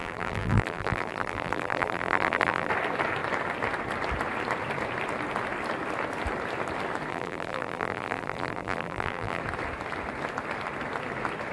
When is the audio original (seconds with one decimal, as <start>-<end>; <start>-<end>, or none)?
2.7-7.1; 9.4-11.5